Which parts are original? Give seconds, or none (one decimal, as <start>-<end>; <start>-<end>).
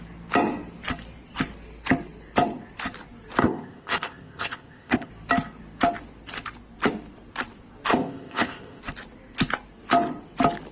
0.0-3.4; 5.1-7.9; 8.8-10.7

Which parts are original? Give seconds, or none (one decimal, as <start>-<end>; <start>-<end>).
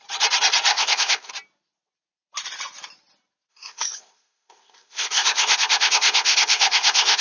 0.0-0.7; 1.3-3.5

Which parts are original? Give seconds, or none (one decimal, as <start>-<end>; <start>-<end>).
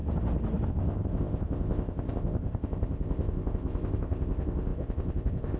0.0-0.7